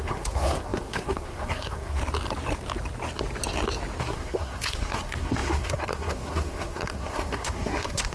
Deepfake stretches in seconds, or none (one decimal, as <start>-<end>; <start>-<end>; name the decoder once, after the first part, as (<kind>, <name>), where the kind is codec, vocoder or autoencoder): 0.0-2.0 (codec, SNAC); 4.0-8.1